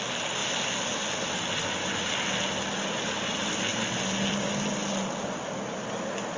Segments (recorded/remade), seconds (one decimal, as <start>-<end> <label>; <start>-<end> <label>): 0.0-6.4 recorded